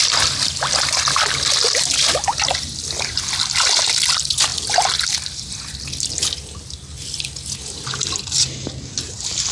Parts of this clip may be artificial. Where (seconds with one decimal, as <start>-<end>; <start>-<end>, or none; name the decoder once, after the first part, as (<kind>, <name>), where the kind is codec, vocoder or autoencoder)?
none

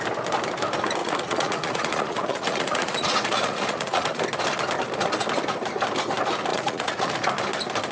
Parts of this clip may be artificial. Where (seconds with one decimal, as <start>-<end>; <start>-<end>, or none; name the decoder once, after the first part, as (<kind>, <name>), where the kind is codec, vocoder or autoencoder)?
1.0-4.2 (vocoder, Vocos); 6.5-7.1

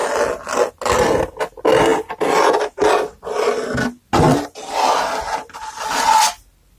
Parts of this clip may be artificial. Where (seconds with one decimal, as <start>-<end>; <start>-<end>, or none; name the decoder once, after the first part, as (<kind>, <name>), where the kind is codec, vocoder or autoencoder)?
none